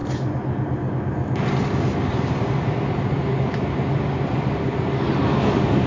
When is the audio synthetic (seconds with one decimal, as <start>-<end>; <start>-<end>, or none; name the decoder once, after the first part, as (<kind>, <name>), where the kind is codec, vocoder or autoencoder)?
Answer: none